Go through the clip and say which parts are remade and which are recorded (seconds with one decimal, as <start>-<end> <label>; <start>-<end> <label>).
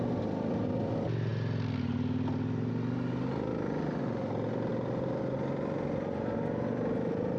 0.0-7.4 recorded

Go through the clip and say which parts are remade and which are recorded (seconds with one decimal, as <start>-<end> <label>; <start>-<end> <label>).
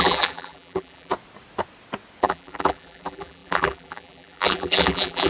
0.0-1.1 remade; 1.1-2.2 recorded; 2.2-5.3 remade